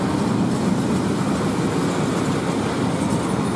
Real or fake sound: real